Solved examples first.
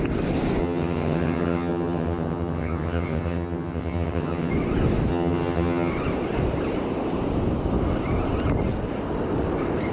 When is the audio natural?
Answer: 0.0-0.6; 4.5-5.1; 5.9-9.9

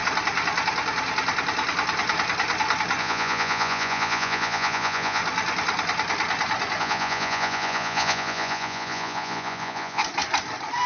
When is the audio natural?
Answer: 0.0-3.0; 5.2-6.8; 10.0-10.9

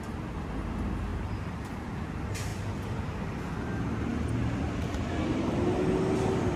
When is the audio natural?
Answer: 0.0-1.1; 2.0-6.6